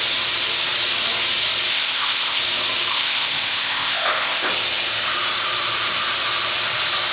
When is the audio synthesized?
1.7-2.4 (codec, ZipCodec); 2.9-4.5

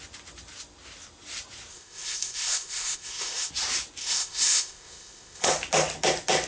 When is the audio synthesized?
1.7-3.5 (codec, ZipCodec); 4.0-5.5

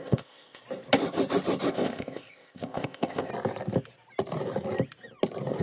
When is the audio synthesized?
0.0-0.6 (codec, ZipCodec); 1.7-3.3

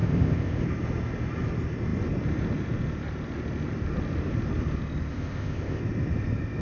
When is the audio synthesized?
0.0-0.6 (codec, ZipCodec); 5.1-5.8

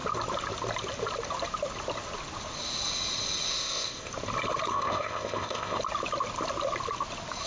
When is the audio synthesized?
3.5-4.1 (codec, ZipCodec); 4.7-5.8

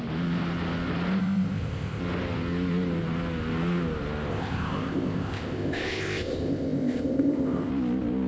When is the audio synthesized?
1.2-2.0 (codec, ZipCodec); 4.3-7.7